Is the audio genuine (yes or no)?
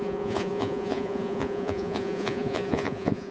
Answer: no